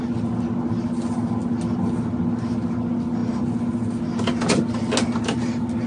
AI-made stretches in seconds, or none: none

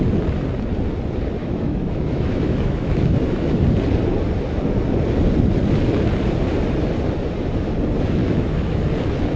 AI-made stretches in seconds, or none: 1.4-3.6 (autoencoder, DAC-VAE); 8.2-8.9

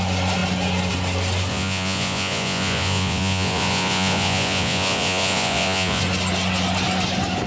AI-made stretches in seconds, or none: 1.5-6.0 (vocoder, Vocos)

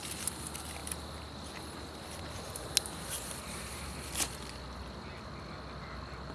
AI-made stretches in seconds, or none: none

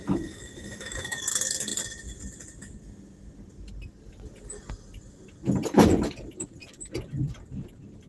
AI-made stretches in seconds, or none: 0.0-1.2 (autoencoder, DAC-VAE)